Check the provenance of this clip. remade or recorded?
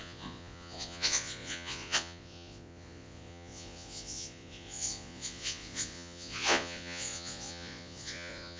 remade